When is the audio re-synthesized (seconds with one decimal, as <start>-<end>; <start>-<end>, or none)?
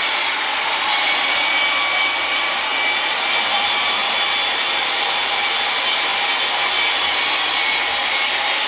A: none